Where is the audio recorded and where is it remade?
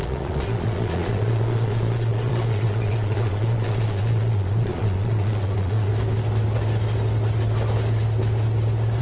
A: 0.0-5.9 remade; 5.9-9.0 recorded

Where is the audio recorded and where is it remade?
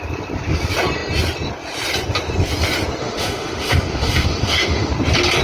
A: 0.0-3.0 recorded; 3.0-4.9 remade; 4.9-5.4 recorded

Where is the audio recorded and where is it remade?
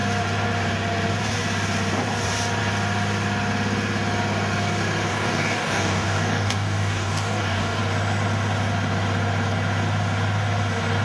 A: 0.0-5.1 recorded; 5.1-7.8 remade; 7.8-11.0 recorded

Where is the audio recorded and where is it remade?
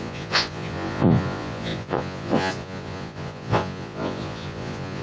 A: 0.0-5.0 remade